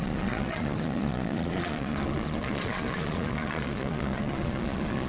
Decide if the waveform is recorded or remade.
remade